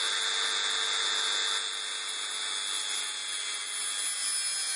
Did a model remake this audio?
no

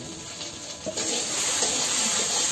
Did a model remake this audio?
yes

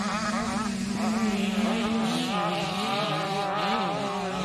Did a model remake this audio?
no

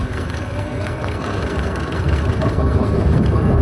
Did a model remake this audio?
yes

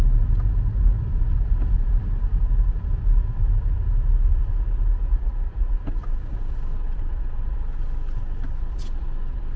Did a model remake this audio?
no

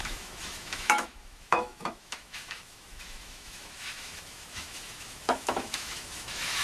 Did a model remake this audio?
yes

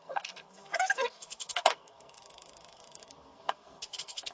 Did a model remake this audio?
yes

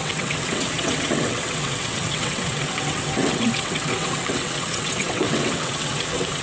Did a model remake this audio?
yes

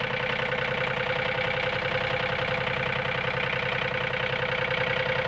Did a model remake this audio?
no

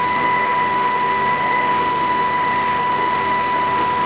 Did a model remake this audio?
yes